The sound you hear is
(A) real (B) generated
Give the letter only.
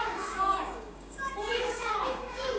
B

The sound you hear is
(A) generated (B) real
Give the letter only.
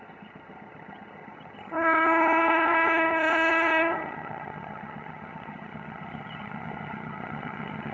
A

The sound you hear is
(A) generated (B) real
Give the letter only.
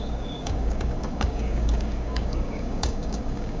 A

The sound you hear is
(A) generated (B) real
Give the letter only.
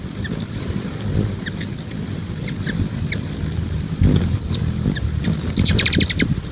A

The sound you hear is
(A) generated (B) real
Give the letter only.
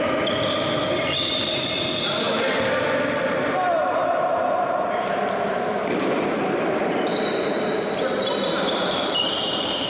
A